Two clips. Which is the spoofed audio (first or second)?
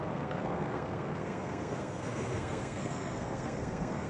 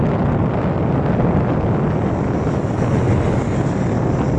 first